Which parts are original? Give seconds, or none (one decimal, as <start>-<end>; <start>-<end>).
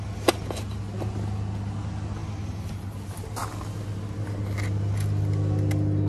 0.0-6.1